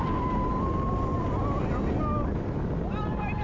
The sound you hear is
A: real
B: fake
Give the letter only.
A